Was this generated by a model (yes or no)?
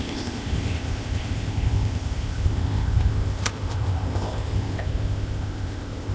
yes